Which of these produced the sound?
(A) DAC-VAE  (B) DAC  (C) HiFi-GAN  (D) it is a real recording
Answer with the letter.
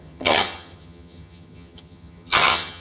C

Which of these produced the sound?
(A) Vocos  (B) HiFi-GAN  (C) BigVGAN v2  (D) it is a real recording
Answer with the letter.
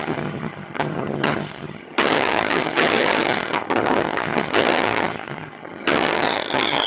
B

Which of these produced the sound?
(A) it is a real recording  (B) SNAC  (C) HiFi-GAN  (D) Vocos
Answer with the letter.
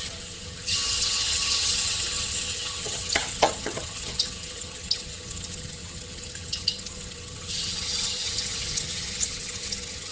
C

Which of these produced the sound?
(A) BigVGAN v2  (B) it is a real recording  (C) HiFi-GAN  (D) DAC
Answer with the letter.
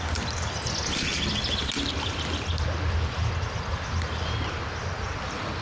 B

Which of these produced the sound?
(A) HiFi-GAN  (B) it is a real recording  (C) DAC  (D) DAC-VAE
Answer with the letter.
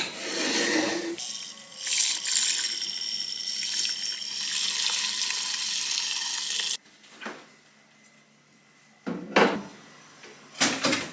B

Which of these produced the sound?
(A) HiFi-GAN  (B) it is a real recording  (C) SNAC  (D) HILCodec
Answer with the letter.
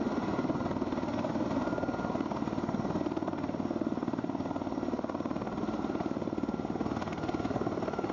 B